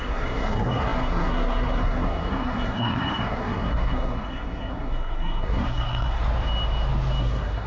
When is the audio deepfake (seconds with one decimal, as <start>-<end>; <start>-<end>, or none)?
0.0-6.2; 7.2-7.7